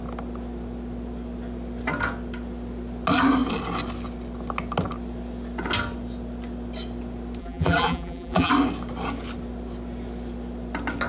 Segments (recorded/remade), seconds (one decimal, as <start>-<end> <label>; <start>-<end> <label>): 0.0-7.4 recorded; 7.4-8.5 remade; 8.5-11.1 recorded